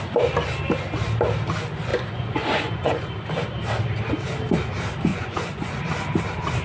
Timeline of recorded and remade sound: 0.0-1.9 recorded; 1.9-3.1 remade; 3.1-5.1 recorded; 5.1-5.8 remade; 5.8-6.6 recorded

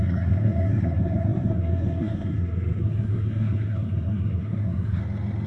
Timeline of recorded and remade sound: 0.0-5.0 remade; 5.0-5.5 recorded

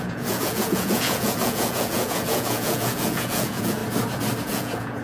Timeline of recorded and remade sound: 0.0-3.8 remade; 3.8-4.4 recorded; 4.4-5.0 remade

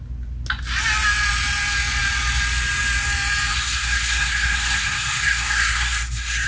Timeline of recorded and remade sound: 0.0-3.5 recorded; 3.5-6.5 remade

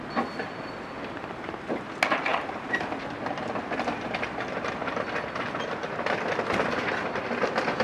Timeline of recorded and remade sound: 0.0-7.8 recorded

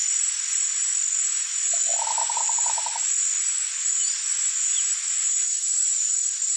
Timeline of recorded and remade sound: 0.0-1.9 recorded; 1.9-3.0 remade; 3.0-3.6 recorded; 3.6-6.1 remade; 6.1-6.6 recorded

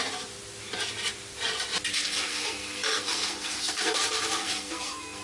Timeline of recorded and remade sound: 0.0-1.9 recorded; 1.9-5.2 remade

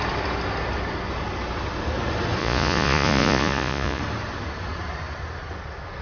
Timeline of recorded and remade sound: 0.0-2.4 recorded; 2.4-4.0 remade; 4.0-6.0 recorded